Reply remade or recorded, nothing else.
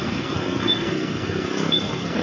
remade